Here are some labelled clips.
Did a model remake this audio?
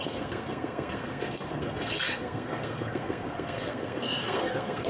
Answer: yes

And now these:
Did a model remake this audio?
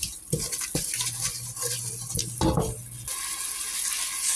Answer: no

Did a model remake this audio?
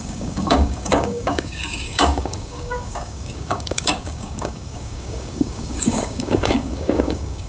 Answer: yes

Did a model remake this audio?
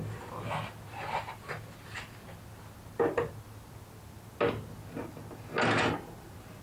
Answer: no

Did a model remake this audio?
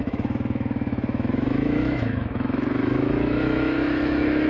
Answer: yes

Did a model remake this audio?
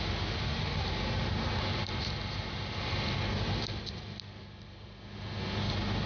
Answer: no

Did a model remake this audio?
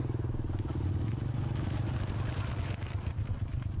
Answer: no